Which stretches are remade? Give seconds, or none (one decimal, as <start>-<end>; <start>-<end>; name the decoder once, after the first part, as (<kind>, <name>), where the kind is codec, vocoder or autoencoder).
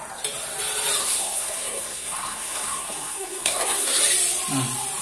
1.0-4.0 (codec, SNAC)